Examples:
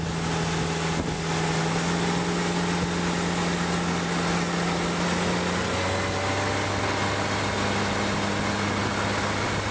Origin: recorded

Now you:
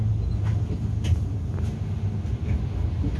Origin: recorded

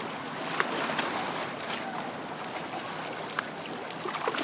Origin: recorded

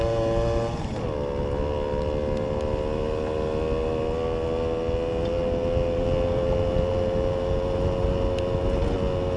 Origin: recorded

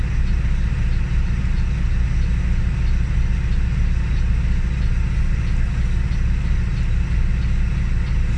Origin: recorded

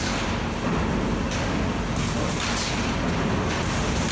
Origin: recorded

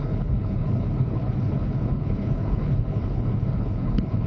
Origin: remade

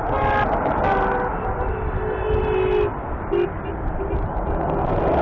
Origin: recorded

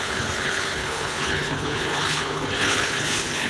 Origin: remade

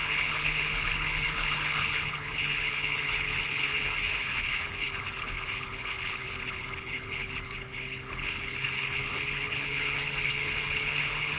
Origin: remade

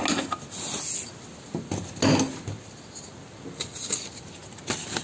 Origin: recorded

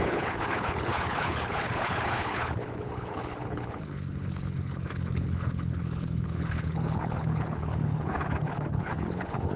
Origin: remade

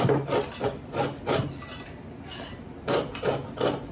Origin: recorded